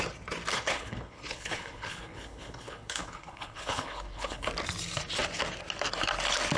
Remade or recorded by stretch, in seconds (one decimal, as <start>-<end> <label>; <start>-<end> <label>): 0.0-0.5 recorded; 0.5-4.5 remade; 4.5-6.6 recorded